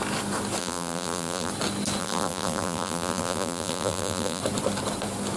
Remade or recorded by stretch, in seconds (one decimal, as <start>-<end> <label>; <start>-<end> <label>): 0.0-0.6 recorded; 0.6-1.5 remade; 1.5-2.0 recorded; 2.0-4.4 remade; 4.4-5.4 recorded